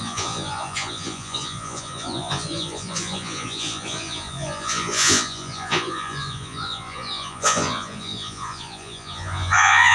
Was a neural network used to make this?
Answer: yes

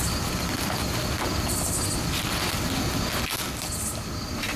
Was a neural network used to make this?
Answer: no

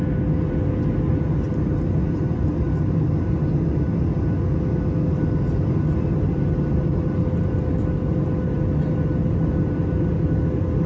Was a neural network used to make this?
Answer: no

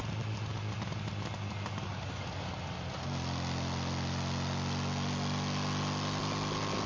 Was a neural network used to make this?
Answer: no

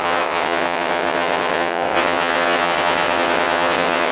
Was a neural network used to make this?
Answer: yes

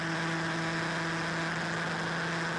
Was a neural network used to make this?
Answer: no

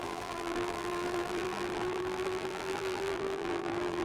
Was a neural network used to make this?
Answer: yes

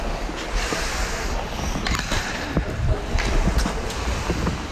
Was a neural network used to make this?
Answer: no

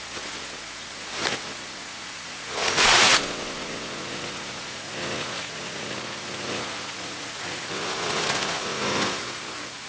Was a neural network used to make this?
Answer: yes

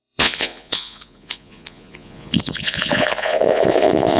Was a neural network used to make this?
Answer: yes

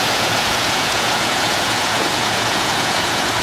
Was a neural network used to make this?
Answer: yes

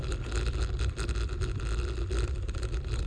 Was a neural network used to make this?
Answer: no